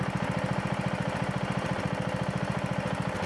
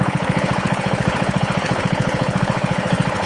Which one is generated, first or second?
second